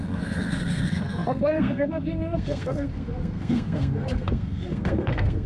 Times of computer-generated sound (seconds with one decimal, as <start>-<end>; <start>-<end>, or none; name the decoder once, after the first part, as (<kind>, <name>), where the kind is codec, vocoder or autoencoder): 0.0-5.5 (codec, SNAC)